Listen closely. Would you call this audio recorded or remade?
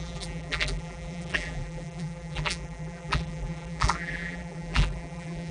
remade